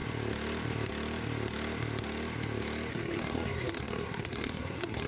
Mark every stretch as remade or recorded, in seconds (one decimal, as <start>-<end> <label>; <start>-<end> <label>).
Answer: 0.0-2.9 recorded; 2.9-5.1 remade